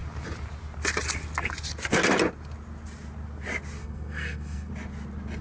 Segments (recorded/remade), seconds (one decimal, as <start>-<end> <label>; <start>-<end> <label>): 0.0-3.8 recorded; 3.8-4.7 remade; 4.7-5.4 recorded